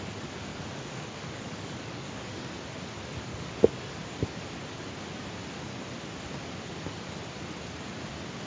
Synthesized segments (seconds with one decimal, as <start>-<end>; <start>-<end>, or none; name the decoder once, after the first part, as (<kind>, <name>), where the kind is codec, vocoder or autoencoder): 0.5-2.5 (codec, DAC); 3.3-3.9